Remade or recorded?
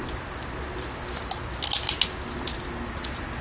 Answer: recorded